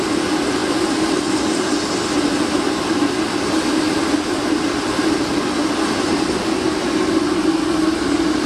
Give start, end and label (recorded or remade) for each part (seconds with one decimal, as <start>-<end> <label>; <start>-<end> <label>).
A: 0.0-8.5 recorded